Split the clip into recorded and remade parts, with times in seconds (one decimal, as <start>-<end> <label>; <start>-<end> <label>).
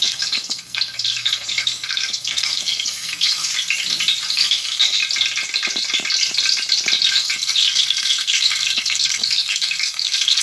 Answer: 0.0-3.5 remade; 3.5-4.3 recorded; 4.3-5.0 remade; 5.0-7.1 recorded; 7.1-10.4 remade